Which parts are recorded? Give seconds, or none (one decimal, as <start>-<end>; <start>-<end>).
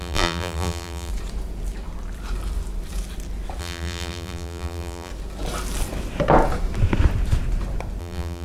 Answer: 1.1-3.6; 5.1-8.0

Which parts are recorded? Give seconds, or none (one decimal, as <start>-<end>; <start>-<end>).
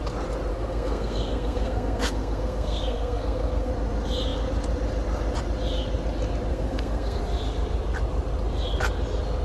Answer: 0.0-0.5; 3.7-6.5; 7.2-9.4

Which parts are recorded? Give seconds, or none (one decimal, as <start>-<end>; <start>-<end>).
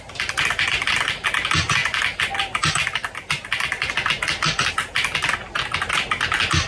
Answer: 0.0-6.7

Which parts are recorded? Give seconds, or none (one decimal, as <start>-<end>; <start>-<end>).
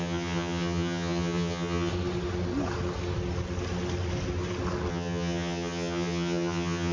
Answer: 1.9-4.9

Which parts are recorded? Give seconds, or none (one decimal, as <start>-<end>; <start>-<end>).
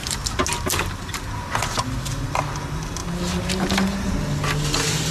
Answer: 0.0-5.1